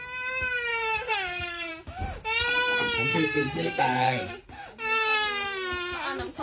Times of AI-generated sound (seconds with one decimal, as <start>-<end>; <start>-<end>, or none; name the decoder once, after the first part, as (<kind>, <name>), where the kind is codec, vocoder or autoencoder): 0.7-1.7 (codec, SNAC); 3.1-4.3